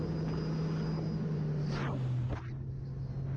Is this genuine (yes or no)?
yes